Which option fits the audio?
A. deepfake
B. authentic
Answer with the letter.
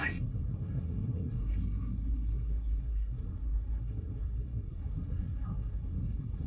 A